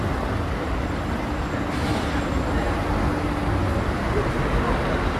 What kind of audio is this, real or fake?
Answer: real